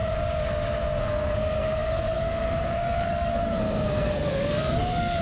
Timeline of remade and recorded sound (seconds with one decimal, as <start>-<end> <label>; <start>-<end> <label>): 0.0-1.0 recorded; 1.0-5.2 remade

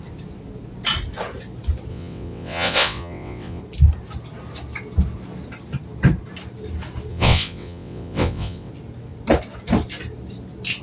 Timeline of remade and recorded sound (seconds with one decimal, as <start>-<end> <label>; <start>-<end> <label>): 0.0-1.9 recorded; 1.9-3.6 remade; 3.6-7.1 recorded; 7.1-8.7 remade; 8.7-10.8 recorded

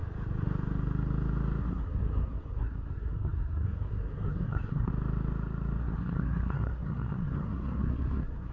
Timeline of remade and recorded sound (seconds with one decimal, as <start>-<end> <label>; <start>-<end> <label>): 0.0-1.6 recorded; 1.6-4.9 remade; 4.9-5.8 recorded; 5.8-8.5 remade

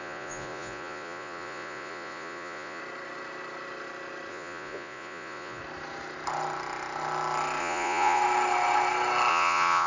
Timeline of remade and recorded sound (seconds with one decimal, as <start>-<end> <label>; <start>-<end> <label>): 0.0-2.8 remade; 2.8-4.3 recorded; 4.3-5.6 remade; 5.6-7.6 recorded; 7.6-8.2 remade; 8.2-9.3 recorded; 9.3-9.9 remade

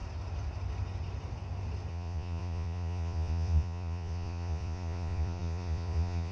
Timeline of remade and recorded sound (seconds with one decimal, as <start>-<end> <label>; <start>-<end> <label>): 0.0-1.9 recorded; 1.9-6.3 remade

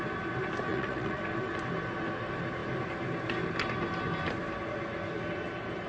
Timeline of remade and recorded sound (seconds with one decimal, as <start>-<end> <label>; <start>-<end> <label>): 0.0-0.7 recorded; 0.7-1.2 remade; 1.2-5.9 recorded